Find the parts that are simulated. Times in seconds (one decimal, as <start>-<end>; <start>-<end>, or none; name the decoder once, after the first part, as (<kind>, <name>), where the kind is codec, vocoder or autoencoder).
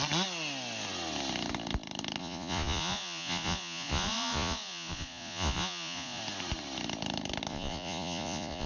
2.2-6.2 (vocoder, Vocos); 7.5-8.7